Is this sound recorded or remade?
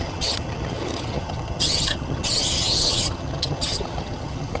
remade